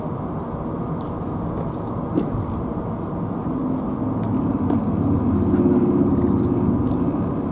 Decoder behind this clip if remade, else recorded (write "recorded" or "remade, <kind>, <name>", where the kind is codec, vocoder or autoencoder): recorded